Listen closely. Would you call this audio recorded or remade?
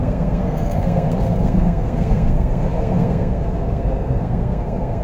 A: remade